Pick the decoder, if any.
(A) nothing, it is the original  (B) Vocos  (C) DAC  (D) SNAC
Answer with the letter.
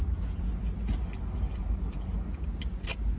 A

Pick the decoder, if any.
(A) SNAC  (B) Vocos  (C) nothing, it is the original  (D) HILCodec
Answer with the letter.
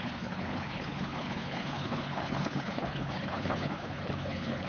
D